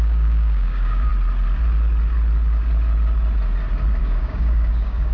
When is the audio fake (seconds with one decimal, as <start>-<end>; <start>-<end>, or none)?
0.0-1.1; 4.0-5.1